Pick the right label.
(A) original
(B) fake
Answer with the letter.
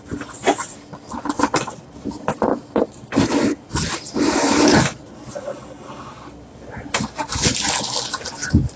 A